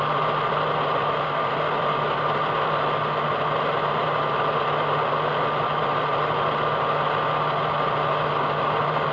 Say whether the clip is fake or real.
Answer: real